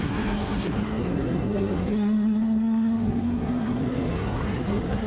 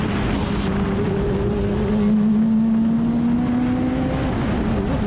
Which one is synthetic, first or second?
first